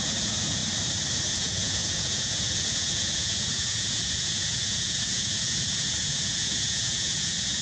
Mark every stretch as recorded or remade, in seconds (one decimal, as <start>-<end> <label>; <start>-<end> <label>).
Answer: 0.0-0.6 remade; 0.6-1.3 recorded; 1.3-7.6 remade